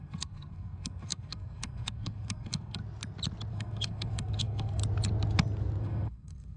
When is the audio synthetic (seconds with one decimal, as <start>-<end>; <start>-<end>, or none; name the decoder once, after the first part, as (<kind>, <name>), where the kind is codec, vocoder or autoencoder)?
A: 0.0-2.8 (codec, SNAC); 3.5-4.8; 5.8-6.6